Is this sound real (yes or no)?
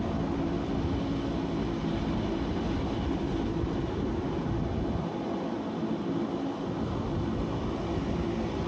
yes